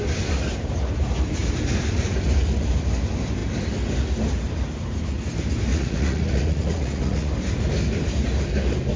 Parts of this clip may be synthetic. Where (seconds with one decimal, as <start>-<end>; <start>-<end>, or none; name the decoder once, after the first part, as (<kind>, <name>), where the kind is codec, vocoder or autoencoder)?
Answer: 5.7-7.3 (vocoder, Vocos)